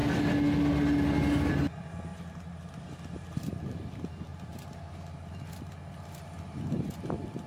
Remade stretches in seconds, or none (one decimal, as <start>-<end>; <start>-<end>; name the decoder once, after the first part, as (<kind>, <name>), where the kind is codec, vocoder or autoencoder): 2.1-2.8 (vocoder, BigVGAN v2); 4.3-5.4